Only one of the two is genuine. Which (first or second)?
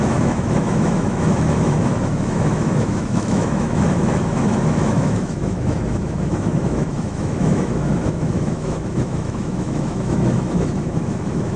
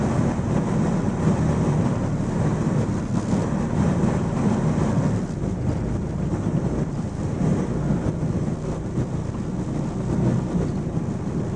second